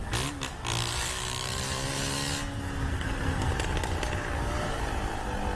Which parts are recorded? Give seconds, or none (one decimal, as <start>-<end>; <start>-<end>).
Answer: 0.0-2.9; 3.5-5.6